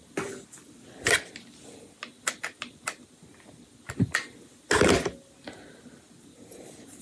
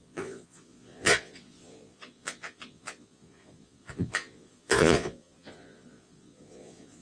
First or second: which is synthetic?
second